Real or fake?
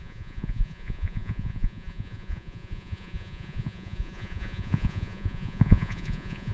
fake